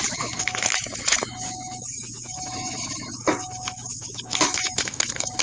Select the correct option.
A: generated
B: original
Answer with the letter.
A